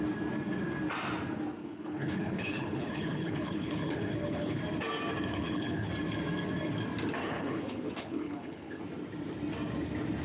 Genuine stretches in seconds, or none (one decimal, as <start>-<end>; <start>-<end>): 0.0-1.6; 4.6-5.3; 5.9-7.2; 8.8-10.2